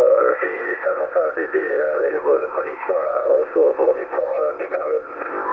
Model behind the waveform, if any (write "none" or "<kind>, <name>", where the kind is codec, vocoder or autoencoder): codec, ZipCodec